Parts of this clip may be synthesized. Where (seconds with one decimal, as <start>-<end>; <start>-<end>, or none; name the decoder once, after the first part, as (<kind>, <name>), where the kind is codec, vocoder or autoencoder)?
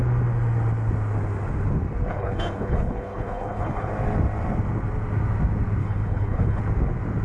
2.1-3.9 (codec, HILCodec); 5.8-6.6